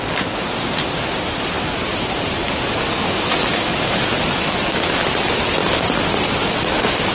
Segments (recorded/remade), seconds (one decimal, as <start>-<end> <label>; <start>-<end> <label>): 0.0-1.9 recorded; 1.9-2.9 remade; 2.9-5.6 recorded; 5.6-6.2 remade; 6.2-7.1 recorded